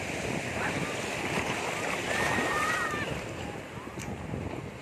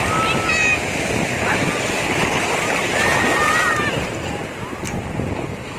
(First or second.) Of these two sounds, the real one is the second